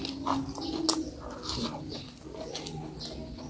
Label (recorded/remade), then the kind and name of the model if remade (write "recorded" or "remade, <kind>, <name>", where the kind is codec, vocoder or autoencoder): recorded